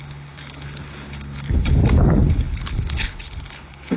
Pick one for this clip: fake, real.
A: fake